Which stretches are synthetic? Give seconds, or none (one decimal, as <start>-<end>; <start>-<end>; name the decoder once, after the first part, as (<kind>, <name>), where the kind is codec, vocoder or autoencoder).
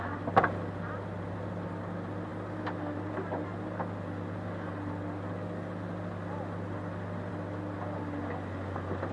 none